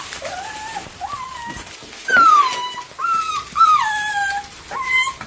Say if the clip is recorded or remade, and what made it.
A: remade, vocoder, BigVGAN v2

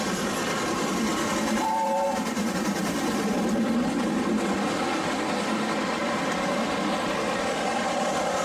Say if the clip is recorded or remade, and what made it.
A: remade, vocoder, BigVGAN v2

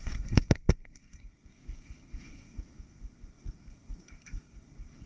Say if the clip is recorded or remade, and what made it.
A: remade, codec, SNAC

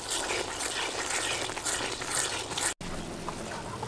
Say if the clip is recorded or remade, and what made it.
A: recorded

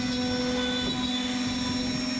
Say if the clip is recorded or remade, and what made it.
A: recorded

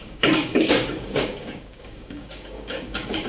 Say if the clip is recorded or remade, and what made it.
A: remade, codec, DAC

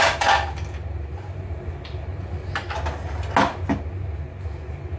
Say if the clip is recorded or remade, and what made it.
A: recorded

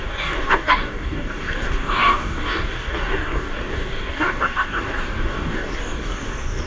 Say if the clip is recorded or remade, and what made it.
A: remade, codec, DAC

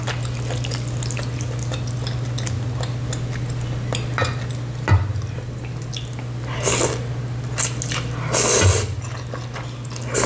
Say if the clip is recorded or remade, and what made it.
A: recorded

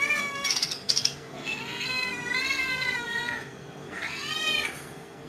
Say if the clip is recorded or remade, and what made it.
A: remade, codec, SNAC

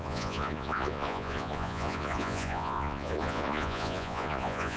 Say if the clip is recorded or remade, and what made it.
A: remade, vocoder, Vocos